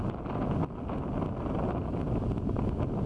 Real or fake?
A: real